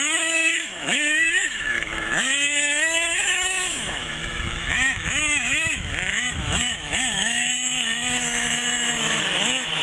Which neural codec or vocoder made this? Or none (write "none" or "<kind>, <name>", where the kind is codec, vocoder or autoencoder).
autoencoder, DAC-VAE